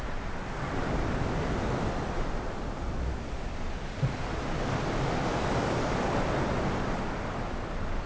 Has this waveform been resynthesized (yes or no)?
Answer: no